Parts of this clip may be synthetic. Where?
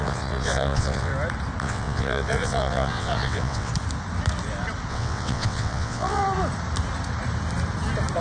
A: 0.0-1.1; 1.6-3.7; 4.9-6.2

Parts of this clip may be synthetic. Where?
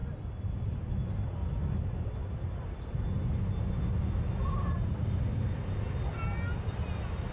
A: none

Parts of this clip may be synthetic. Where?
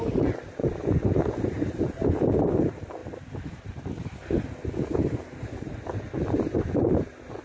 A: none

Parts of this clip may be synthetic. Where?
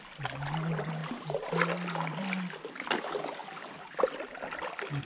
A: none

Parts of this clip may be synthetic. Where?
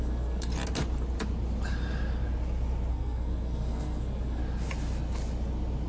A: 0.0-0.5; 2.9-4.4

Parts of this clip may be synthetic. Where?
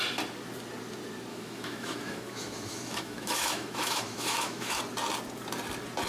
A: 1.3-4.8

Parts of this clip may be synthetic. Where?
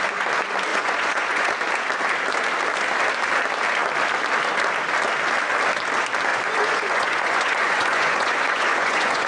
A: 0.7-1.5; 6.3-9.3